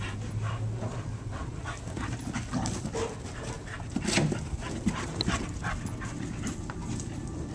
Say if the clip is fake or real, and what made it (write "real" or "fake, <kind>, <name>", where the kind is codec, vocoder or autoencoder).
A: real